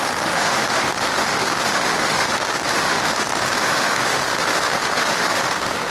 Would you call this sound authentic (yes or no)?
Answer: no